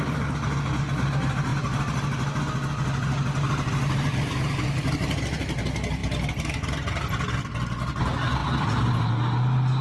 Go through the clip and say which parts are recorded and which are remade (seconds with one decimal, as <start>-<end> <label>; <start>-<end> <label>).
0.0-9.8 recorded